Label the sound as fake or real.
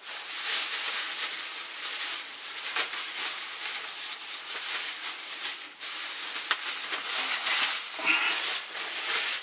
real